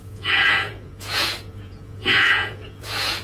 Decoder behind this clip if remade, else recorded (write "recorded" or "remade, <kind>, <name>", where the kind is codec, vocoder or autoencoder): remade, vocoder, Vocos